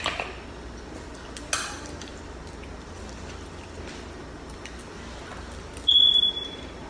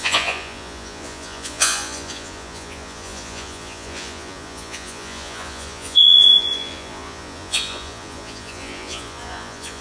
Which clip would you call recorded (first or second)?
first